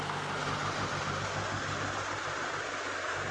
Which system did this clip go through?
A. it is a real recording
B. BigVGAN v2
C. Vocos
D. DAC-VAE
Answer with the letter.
A